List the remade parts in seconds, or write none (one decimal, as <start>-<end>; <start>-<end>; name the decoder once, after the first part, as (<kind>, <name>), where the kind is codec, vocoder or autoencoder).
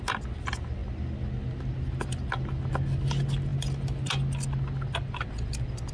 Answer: none